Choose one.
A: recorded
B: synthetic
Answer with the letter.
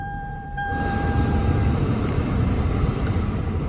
B